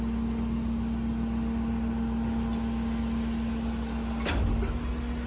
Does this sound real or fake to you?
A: real